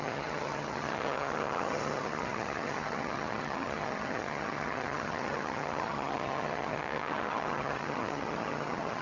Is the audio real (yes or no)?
no